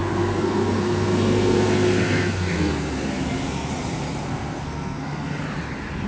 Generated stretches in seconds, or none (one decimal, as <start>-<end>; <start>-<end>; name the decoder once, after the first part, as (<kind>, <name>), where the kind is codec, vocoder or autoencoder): 0.0-3.7 (codec, SNAC); 4.3-5.4